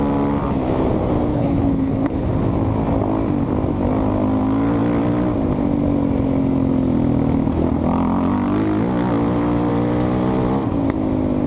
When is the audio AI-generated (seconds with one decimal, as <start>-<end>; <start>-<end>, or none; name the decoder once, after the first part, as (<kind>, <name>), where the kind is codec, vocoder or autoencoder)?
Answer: 1.3-2.3 (codec, HILCodec)